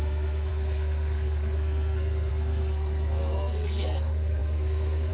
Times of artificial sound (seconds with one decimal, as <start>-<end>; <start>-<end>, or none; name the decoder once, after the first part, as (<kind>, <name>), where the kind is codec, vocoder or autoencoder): 0.0-5.1 (codec, SNAC)

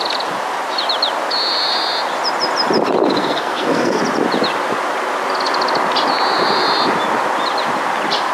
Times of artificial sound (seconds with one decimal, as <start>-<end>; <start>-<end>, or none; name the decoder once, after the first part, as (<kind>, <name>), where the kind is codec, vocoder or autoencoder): 3.2-4.0 (codec, SNAC)